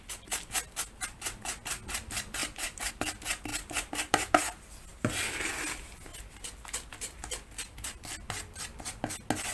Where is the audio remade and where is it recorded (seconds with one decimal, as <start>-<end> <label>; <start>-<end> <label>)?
0.0-2.4 recorded; 2.4-2.9 remade; 2.9-3.5 recorded; 3.5-4.4 remade; 4.4-4.9 recorded; 4.9-5.5 remade; 5.5-9.5 recorded